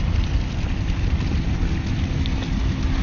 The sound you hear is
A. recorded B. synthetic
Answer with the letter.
A